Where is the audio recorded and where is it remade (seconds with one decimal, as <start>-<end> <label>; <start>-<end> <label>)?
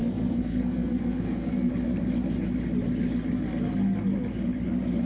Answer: 0.0-1.7 remade; 1.7-5.1 recorded